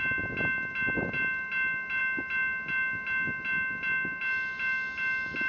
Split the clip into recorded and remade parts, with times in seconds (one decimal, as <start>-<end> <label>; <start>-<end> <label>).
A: 0.0-5.5 recorded